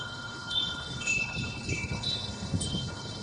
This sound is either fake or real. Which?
fake